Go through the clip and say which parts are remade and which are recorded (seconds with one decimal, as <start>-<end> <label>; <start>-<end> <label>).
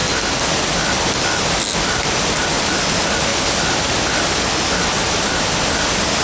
0.0-2.4 recorded; 2.4-3.3 remade; 3.3-4.6 recorded; 4.6-6.2 remade